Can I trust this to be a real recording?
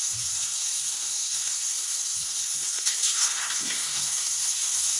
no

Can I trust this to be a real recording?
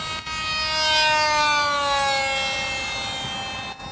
yes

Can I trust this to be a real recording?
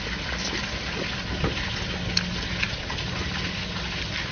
yes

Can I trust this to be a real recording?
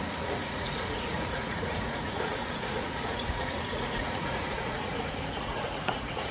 no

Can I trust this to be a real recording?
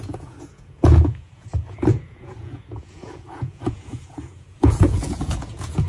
no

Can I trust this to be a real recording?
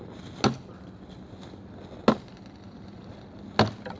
yes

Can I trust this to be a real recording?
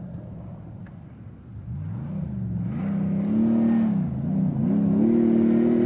yes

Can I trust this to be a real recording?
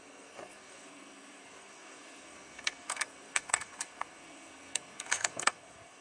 no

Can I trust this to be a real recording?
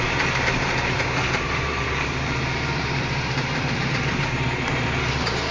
no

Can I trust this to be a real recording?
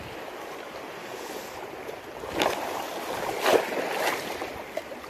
yes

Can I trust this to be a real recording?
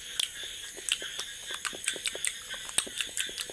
yes